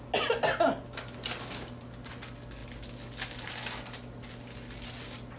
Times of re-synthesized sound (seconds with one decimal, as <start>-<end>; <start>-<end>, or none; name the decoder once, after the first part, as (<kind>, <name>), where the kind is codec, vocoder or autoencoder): none

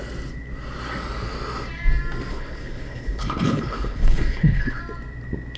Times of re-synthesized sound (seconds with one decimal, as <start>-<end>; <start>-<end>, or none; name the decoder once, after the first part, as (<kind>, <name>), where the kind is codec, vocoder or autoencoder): 2.3-4.8 (codec, HILCodec)

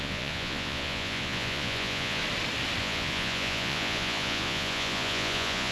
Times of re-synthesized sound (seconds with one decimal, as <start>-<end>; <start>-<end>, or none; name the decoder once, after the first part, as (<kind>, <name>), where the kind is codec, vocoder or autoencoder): 0.0-2.2 (vocoder, Vocos); 2.8-5.7

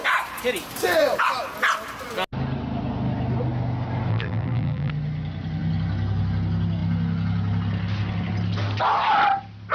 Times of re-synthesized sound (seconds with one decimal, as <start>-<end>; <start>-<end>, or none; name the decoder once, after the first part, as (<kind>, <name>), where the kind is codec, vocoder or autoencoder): 4.1-4.9 (vocoder, BigVGAN v2)

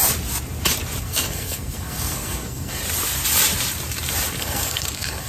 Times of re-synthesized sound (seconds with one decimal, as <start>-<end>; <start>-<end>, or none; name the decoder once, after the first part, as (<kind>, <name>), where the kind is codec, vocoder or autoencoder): 1.0-2.8 (codec, SNAC); 4.4-5.3

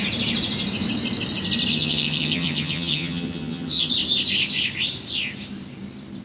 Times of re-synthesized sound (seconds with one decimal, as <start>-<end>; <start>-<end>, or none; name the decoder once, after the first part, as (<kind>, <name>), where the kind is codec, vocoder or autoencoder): 1.7-3.9 (vocoder, HiFi-GAN)

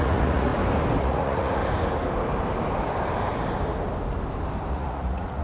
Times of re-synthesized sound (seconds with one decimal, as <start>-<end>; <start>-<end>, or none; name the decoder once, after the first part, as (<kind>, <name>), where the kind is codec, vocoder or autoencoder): 0.0-0.5 (vocoder, Vocos); 1.0-1.6; 4.7-5.4